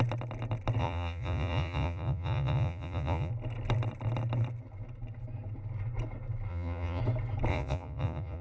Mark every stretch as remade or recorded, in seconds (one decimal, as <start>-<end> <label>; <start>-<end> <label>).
0.0-0.8 recorded; 0.8-3.3 remade; 3.3-6.5 recorded; 6.5-7.0 remade; 7.0-7.5 recorded; 7.5-8.4 remade